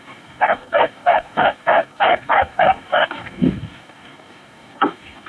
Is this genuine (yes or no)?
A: no